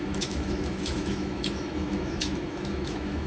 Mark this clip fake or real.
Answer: fake